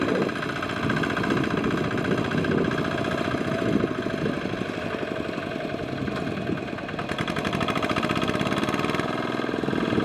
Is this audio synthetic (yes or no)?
no